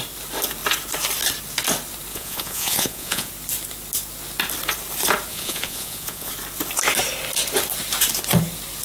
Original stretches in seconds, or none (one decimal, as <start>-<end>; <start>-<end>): 0.0-2.1; 3.3-5.3; 6.3-8.8